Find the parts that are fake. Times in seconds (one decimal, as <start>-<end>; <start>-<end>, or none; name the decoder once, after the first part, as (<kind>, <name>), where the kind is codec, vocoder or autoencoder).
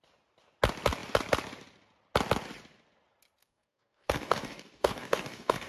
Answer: 3.4-5.7 (codec, DAC)